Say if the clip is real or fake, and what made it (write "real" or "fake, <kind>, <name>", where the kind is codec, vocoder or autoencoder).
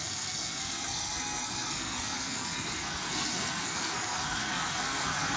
fake, codec, SNAC